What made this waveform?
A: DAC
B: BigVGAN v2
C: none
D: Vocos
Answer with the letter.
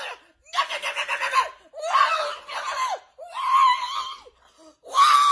C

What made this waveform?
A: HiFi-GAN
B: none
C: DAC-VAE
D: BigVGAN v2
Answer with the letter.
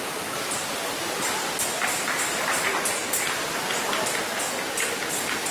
B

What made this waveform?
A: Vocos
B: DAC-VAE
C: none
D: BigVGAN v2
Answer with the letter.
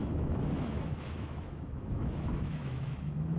B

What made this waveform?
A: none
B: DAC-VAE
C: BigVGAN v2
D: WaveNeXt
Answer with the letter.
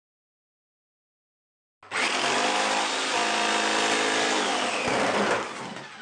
A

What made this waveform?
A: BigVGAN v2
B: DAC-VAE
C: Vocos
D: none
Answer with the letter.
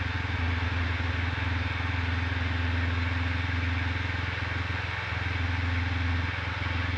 D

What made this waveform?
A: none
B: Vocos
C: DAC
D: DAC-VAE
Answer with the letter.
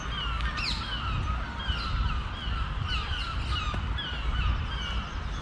A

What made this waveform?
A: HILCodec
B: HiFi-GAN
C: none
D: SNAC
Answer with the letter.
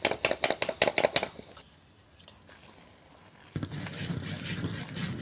C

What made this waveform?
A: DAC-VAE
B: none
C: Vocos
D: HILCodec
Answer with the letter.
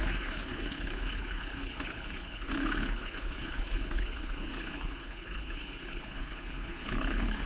D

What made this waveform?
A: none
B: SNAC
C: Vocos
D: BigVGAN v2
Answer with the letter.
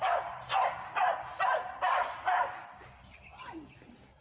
D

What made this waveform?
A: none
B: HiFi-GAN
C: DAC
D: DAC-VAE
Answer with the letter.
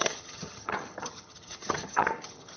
B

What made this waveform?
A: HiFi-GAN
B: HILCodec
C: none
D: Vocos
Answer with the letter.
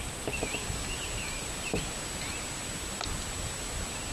C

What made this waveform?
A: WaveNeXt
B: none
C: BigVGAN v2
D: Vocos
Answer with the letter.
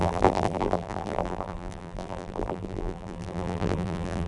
C